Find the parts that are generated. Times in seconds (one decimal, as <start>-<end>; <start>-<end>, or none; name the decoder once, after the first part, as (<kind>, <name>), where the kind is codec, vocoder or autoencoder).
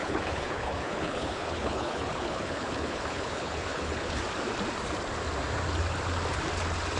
0.0-4.2 (codec, HILCodec)